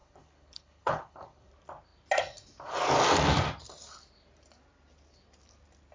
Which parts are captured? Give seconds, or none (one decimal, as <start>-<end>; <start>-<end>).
1.5-5.9

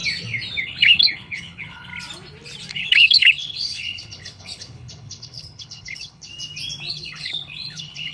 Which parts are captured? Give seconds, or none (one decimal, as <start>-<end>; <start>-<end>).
0.0-0.6; 1.9-2.7; 6.3-6.9